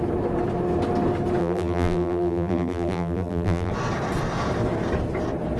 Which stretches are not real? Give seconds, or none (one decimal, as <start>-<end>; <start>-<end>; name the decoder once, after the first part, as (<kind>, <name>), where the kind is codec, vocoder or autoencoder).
1.4-3.7 (vocoder, BigVGAN v2)